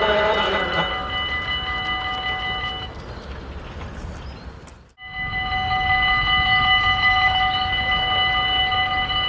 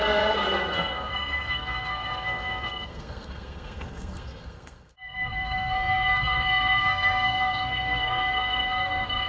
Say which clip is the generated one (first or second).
second